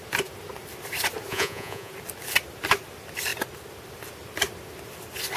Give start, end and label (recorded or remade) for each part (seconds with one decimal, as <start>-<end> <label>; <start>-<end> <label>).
0.0-1.3 recorded; 1.3-1.9 remade; 1.9-5.4 recorded